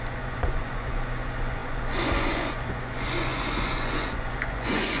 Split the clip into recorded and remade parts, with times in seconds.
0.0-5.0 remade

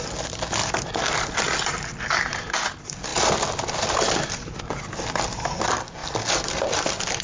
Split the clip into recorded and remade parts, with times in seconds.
0.0-7.2 recorded

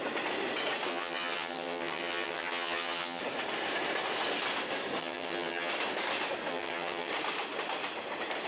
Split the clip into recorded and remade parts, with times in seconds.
0.0-0.9 recorded; 0.9-3.2 remade; 3.2-5.0 recorded; 5.0-5.7 remade; 5.7-6.5 recorded; 6.5-7.1 remade; 7.1-8.5 recorded

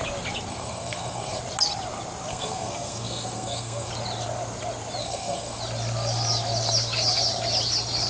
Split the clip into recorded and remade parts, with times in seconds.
0.0-0.5 recorded; 0.5-1.4 remade; 1.4-2.3 recorded; 2.3-3.9 remade; 3.9-5.0 recorded; 5.0-5.6 remade; 5.6-8.1 recorded

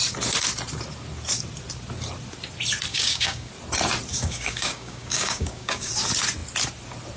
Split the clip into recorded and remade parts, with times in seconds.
0.0-2.9 recorded; 2.9-3.5 remade; 3.5-4.1 recorded; 4.1-5.9 remade; 5.9-7.2 recorded

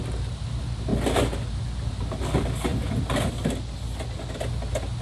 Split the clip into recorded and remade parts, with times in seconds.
0.0-5.0 recorded

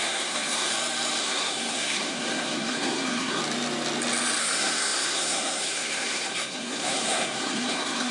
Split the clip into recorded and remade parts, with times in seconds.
0.0-0.7 remade; 0.7-1.2 recorded; 1.2-3.4 remade; 3.4-4.4 recorded; 4.4-8.1 remade